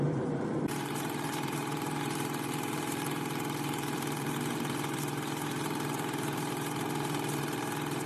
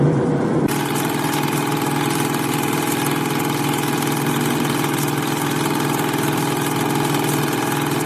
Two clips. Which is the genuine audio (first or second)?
second